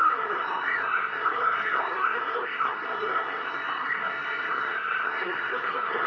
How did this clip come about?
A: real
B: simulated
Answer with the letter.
B